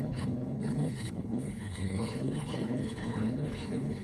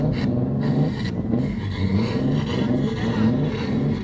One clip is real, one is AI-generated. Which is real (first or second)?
second